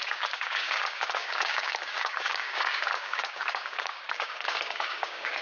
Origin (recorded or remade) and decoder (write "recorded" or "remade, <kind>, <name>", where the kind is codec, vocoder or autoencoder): remade, codec, DAC